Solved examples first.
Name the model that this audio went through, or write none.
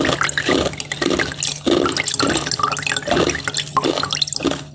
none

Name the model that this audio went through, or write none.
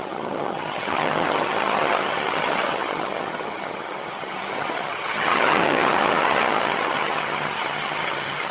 vocoder, HiFi-GAN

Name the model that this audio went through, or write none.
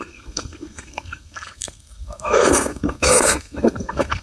codec, SNAC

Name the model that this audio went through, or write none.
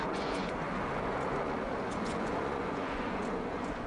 vocoder, Vocos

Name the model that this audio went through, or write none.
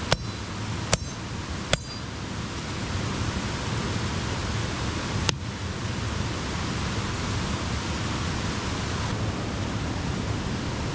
none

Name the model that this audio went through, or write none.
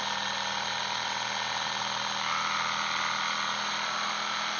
none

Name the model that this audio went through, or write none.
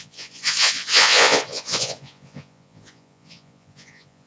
vocoder, Vocos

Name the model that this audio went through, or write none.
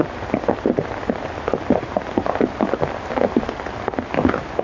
none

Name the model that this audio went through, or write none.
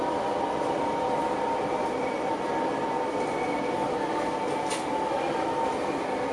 none